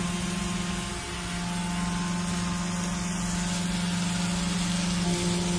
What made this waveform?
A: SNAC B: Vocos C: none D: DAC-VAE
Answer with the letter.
C